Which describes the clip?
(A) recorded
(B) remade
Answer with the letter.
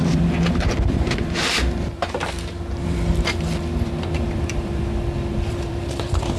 B